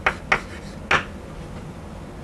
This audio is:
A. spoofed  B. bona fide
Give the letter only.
B